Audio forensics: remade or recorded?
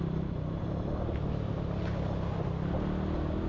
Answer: recorded